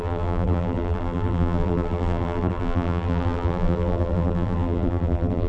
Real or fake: fake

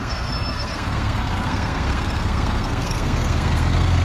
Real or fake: fake